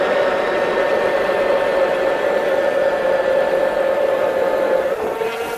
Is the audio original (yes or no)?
yes